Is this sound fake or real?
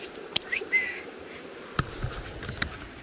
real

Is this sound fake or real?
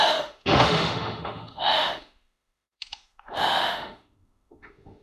fake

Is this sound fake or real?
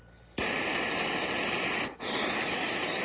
real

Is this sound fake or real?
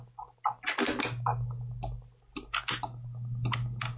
real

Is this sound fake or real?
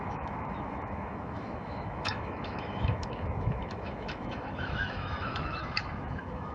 fake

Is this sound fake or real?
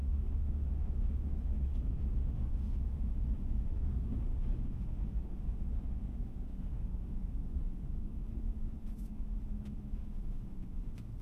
fake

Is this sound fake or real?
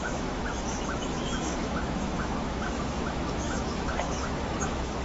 fake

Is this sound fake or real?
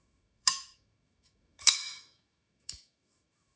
fake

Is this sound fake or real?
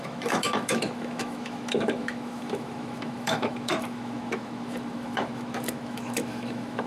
fake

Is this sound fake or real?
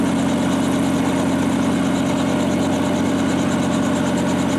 real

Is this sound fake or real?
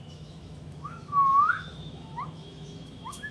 fake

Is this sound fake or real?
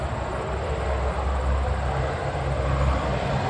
real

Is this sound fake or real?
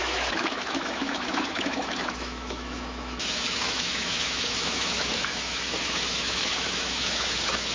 fake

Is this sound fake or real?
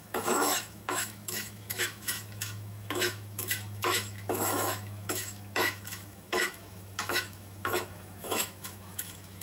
fake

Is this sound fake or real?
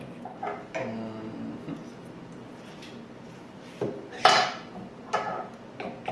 real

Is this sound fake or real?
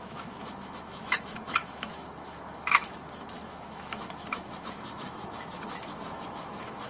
fake